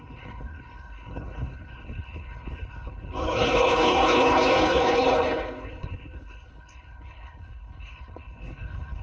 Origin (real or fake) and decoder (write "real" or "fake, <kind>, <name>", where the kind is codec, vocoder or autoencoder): fake, codec, HILCodec